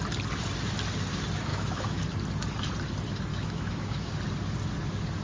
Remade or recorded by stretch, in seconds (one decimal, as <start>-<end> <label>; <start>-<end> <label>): 0.0-1.5 recorded; 1.5-2.0 remade; 2.0-3.3 recorded; 3.3-4.1 remade; 4.1-5.2 recorded